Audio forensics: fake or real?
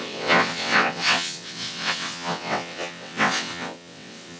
fake